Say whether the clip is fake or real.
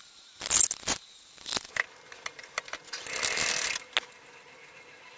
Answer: real